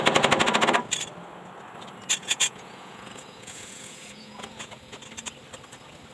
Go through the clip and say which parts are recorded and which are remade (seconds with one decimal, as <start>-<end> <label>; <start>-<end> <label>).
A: 0.0-2.2 recorded; 2.2-5.0 remade; 5.0-6.1 recorded